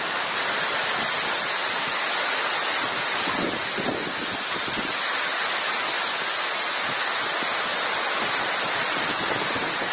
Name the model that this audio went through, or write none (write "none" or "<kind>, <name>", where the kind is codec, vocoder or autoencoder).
none